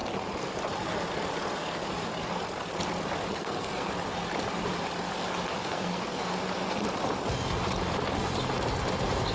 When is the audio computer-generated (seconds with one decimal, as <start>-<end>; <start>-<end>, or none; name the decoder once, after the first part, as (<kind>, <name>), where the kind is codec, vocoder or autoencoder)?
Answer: 3.4-3.9 (codec, SNAC); 5.6-6.3